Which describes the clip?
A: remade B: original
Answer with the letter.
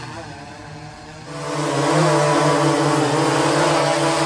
B